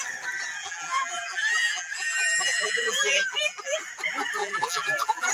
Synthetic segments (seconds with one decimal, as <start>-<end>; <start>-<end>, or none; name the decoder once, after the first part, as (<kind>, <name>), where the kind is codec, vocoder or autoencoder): 0.6-3.8 (vocoder, BigVGAN v2); 4.4-5.3